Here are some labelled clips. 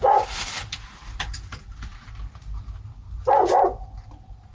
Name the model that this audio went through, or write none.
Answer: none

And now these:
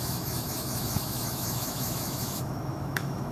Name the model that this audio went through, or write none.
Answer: autoencoder, DAC-VAE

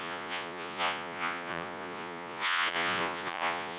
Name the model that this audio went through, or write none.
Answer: vocoder, Vocos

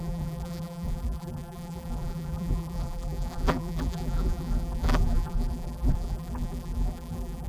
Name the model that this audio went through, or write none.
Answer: vocoder, BigVGAN v2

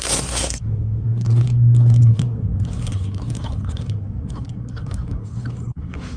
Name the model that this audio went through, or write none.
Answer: codec, SNAC